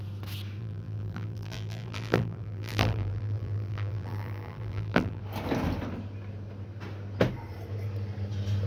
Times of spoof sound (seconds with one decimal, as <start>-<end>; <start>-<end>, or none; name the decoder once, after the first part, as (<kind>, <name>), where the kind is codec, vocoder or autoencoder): 0.6-5.2 (vocoder, BigVGAN v2)